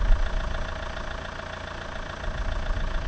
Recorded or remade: recorded